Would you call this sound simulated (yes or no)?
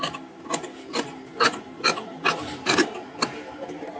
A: no